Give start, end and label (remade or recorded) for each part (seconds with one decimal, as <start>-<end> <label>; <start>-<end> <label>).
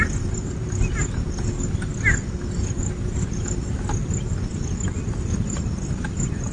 0.0-6.5 recorded